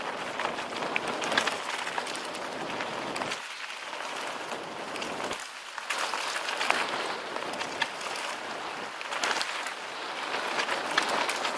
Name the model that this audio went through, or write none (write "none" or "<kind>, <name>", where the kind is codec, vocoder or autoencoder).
none